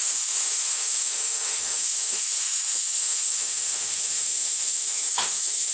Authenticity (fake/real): fake